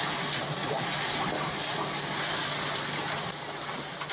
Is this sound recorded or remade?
recorded